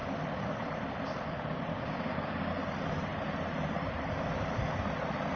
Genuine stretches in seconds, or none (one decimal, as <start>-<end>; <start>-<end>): 0.0-1.7; 2.5-5.4